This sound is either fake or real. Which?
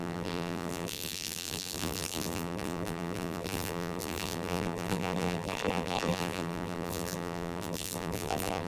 fake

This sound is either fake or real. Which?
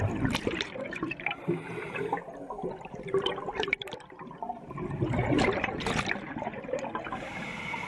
fake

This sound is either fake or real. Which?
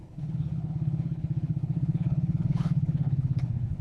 fake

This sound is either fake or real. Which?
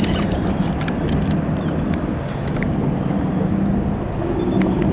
real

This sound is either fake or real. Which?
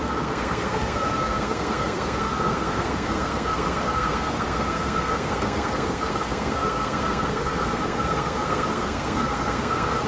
fake